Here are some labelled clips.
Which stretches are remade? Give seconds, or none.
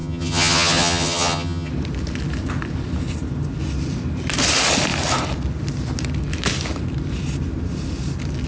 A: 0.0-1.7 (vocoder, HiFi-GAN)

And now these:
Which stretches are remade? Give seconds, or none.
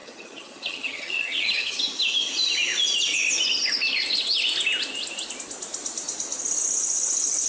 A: 0.0-1.8 (vocoder, HiFi-GAN)